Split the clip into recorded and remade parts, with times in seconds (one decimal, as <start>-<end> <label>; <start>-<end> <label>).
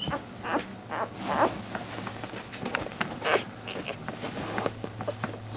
0.0-5.6 recorded